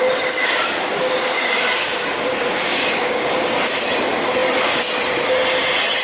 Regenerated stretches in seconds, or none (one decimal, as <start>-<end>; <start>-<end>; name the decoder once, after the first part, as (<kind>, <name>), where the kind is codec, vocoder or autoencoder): 0.4-3.7 (codec, DAC)